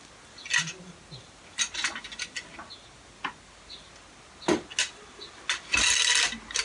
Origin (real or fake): real